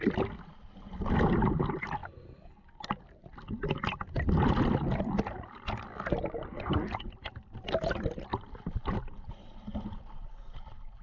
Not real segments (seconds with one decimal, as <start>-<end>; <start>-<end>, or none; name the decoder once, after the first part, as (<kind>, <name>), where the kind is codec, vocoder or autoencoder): 6.5-7.7 (vocoder, BigVGAN v2); 8.3-9.3

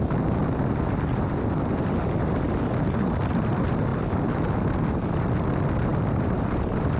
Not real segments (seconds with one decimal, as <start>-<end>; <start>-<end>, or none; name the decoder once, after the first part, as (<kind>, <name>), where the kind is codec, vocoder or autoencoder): none

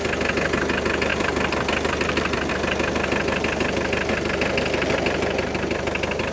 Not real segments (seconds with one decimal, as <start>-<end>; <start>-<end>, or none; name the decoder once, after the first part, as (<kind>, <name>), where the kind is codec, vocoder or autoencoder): 1.1-2.5 (vocoder, BigVGAN v2)

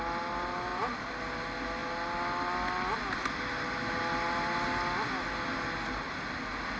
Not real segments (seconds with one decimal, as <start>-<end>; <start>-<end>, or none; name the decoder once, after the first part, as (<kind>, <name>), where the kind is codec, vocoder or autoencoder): none

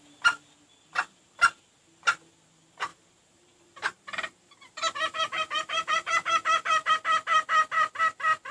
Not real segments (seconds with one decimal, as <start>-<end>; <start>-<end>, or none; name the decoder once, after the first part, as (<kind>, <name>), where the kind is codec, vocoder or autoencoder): 2.9-6.9 (vocoder, BigVGAN v2)